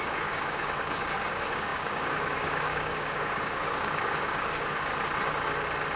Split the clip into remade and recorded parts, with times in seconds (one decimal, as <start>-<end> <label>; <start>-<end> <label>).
0.0-4.9 remade; 4.9-6.0 recorded